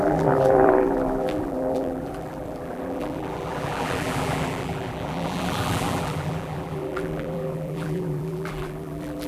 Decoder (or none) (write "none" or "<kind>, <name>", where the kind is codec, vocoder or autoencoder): vocoder, BigVGAN v2